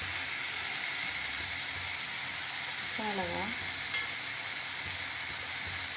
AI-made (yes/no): no